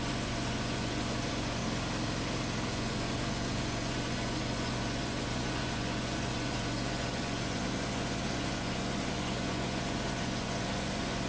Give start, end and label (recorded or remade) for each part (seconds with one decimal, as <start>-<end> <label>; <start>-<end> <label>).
0.0-1.6 remade; 1.6-2.7 recorded; 2.7-11.3 remade